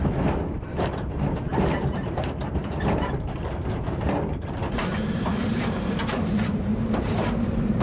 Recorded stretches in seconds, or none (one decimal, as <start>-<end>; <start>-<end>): none